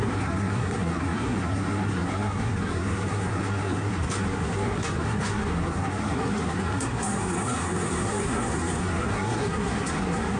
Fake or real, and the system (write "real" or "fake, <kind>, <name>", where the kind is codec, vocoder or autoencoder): fake, codec, SNAC